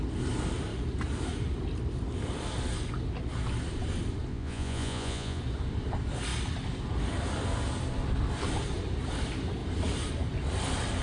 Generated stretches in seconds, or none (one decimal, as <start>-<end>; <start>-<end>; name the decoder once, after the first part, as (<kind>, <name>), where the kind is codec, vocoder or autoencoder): 4.3-5.4 (vocoder, Vocos)